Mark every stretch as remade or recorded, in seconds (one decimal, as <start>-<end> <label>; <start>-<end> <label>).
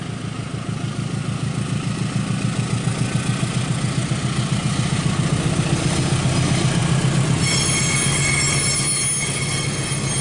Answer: 0.0-10.2 recorded